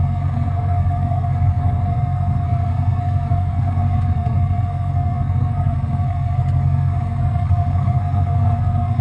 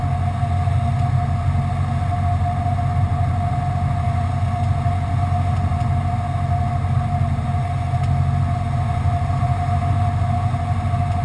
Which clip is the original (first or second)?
second